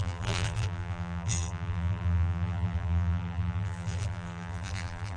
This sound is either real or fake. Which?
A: fake